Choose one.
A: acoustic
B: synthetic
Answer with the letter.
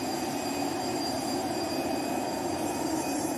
B